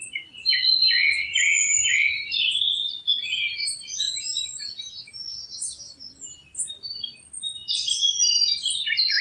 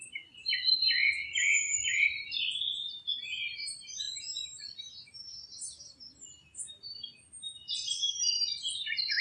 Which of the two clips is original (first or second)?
first